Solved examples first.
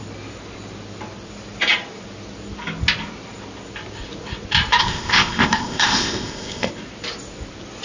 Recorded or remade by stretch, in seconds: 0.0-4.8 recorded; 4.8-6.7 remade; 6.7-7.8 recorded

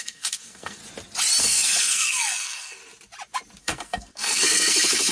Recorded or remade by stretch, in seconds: 0.0-0.8 remade; 0.8-1.4 recorded; 1.4-2.8 remade; 2.8-3.6 recorded; 3.6-5.1 remade

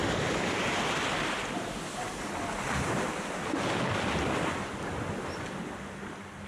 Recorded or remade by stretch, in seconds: 0.0-6.5 recorded

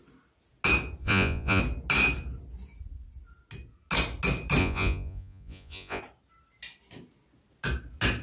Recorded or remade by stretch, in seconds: 0.0-1.0 recorded; 1.0-1.6 remade; 1.6-4.6 recorded; 4.6-6.0 remade; 6.0-8.2 recorded

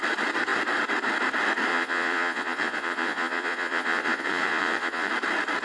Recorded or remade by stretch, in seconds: 0.0-1.7 recorded; 1.7-5.1 remade; 5.1-5.6 recorded

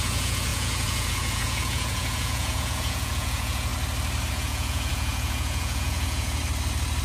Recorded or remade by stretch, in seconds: 0.0-3.7 remade; 3.7-4.3 recorded; 4.3-6.4 remade; 6.4-7.0 recorded